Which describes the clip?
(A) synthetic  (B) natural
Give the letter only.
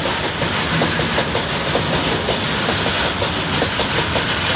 B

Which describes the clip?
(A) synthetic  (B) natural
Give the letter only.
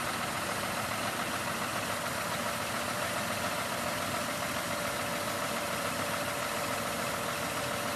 B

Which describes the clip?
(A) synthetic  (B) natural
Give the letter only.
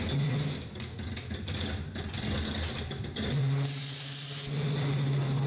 B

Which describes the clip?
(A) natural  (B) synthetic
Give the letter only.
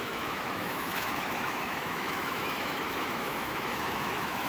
B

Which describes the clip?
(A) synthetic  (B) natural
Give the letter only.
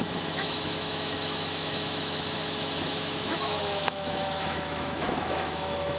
A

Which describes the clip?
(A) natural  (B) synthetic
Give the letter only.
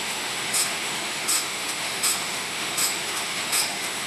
B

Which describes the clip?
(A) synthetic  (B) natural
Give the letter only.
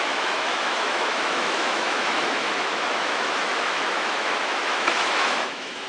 A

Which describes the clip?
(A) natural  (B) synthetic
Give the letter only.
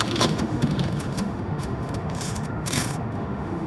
B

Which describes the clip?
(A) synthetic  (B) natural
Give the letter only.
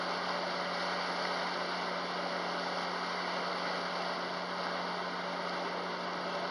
B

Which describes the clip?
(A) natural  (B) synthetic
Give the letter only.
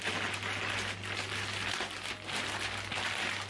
A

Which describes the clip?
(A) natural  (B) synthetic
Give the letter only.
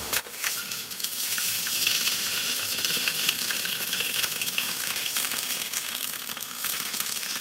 B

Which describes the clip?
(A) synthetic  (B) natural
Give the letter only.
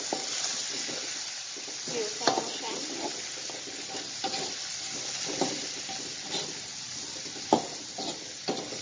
B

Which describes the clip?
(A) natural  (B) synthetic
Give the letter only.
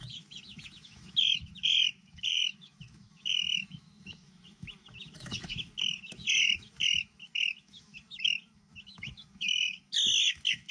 B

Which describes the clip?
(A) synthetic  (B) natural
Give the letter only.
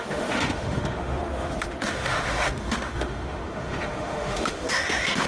A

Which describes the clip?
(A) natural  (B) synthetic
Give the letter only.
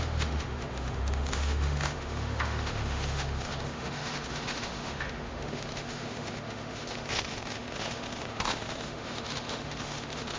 B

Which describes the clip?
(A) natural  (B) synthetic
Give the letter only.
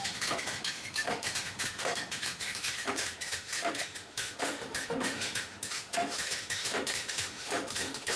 B